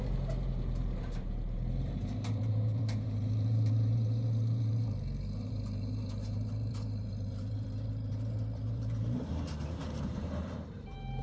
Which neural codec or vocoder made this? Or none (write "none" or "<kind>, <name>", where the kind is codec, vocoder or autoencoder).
vocoder, BigVGAN v2